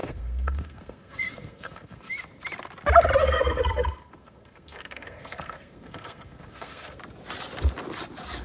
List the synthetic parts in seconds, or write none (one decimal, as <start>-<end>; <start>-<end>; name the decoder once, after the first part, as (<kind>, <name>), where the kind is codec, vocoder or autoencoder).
0.0-2.1 (codec, SNAC); 3.2-7.0